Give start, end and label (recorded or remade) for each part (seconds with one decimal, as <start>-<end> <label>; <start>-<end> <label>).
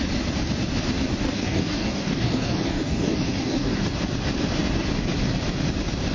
0.0-1.2 recorded; 1.2-3.8 remade; 3.8-6.1 recorded